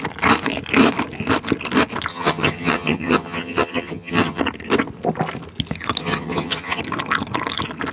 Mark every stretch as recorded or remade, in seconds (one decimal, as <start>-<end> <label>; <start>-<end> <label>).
0.0-2.1 recorded; 2.1-4.4 remade; 4.4-6.0 recorded; 6.0-6.8 remade; 6.8-7.9 recorded